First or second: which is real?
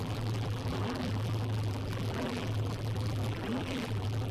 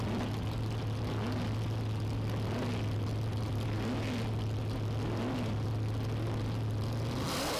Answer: second